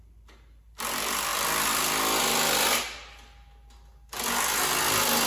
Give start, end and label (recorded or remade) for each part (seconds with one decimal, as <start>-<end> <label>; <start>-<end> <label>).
0.0-5.3 recorded